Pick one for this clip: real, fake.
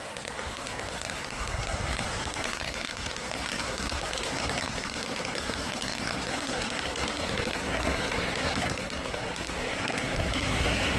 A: fake